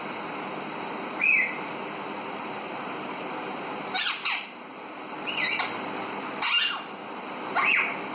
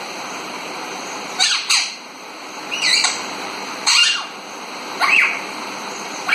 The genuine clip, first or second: first